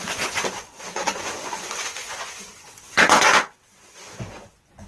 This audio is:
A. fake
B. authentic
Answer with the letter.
A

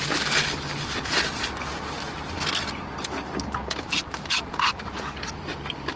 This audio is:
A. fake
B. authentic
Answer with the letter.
B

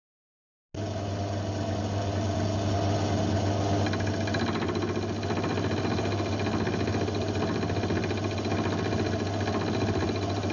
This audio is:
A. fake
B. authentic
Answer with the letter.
B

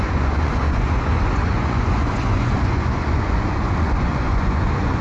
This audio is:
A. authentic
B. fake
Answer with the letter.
B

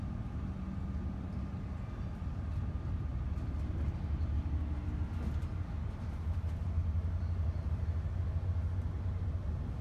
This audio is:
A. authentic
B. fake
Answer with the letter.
A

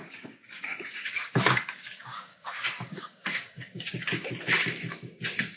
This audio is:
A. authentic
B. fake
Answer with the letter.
B